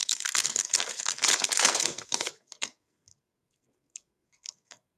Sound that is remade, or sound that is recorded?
remade